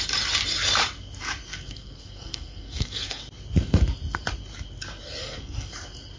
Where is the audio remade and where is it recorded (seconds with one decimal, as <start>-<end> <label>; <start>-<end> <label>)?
0.0-1.5 recorded; 1.5-3.2 remade; 3.2-5.2 recorded; 5.2-5.7 remade; 5.7-6.2 recorded